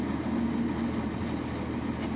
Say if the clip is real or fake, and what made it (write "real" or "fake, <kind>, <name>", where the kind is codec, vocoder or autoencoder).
real